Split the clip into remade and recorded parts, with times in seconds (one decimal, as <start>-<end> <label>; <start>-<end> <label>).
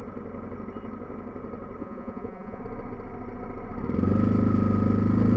0.0-1.8 recorded; 1.8-2.6 remade; 2.6-5.4 recorded